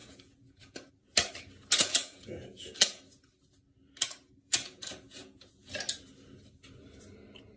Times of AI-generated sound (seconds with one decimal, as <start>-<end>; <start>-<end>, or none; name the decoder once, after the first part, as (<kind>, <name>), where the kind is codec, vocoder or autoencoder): 0.0-0.9 (vocoder, Vocos); 1.8-3.0; 4.4-5.7